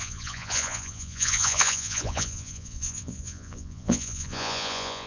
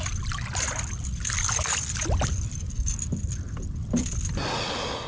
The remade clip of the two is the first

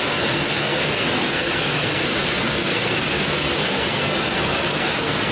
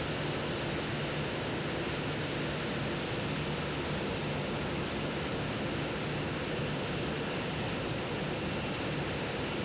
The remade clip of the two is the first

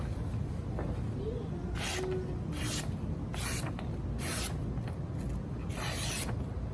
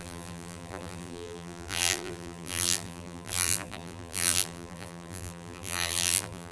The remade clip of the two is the second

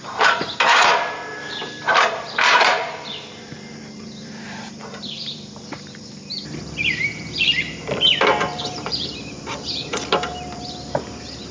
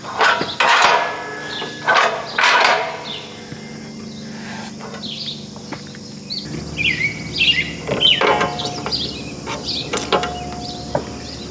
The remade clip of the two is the first